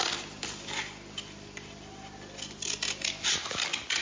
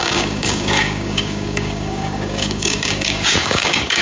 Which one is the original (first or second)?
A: first